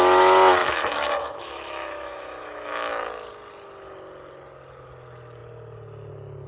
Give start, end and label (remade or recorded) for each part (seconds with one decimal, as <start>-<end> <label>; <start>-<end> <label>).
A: 0.0-0.6 recorded; 0.6-2.9 remade; 2.9-6.5 recorded